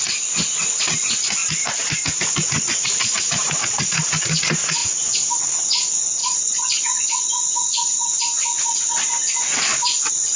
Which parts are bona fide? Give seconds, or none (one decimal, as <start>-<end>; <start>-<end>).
0.0-6.2; 7.3-10.4